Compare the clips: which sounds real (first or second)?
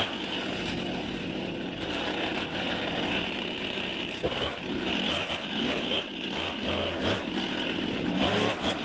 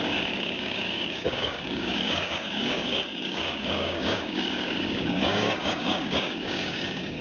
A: first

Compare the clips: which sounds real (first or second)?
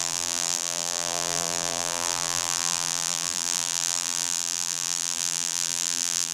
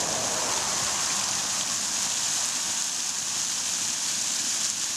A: second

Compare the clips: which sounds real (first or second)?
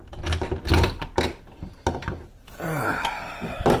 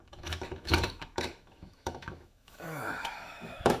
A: first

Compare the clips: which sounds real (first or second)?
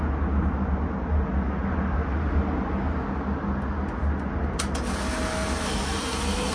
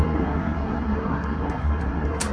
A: first